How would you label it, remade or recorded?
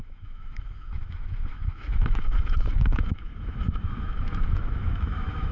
remade